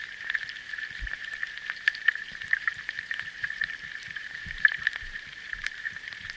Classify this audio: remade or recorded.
remade